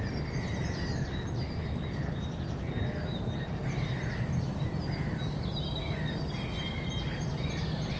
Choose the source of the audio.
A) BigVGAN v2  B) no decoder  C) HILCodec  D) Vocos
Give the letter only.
B